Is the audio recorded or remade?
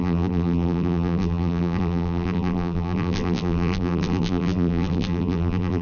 remade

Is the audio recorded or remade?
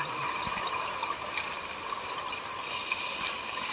recorded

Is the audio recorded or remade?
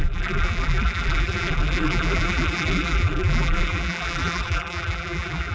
remade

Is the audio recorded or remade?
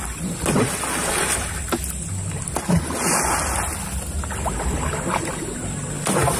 recorded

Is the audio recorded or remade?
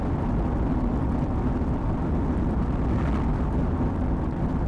remade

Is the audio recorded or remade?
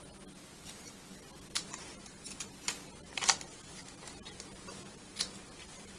recorded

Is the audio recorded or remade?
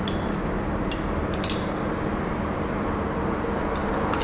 recorded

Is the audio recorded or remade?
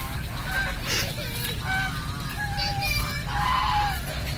recorded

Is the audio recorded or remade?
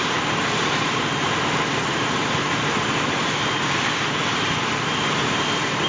remade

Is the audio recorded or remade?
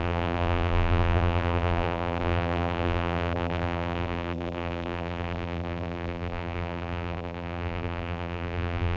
remade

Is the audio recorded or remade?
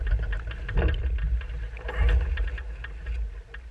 recorded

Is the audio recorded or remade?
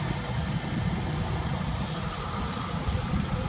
recorded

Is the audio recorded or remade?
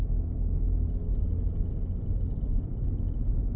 recorded